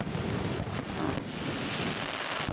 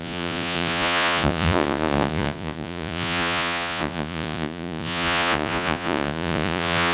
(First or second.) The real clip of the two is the first